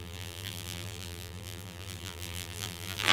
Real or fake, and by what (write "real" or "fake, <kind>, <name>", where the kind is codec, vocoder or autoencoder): fake, vocoder, BigVGAN v2